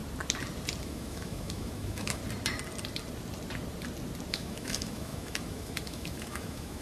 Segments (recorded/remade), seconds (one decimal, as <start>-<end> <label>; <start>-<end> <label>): 0.0-0.8 recorded; 0.8-2.2 remade; 2.2-4.3 recorded; 4.3-6.8 remade